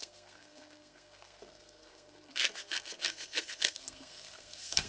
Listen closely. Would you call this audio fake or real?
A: fake